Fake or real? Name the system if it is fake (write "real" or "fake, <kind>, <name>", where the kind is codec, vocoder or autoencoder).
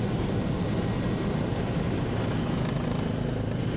real